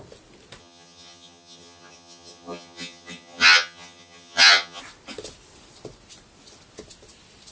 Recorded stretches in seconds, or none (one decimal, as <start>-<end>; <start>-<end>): 0.0-0.6; 4.8-7.5